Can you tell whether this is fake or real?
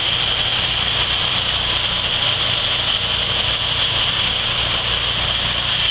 real